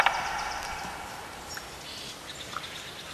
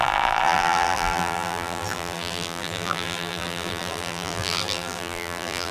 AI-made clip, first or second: second